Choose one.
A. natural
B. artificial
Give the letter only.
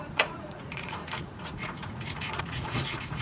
B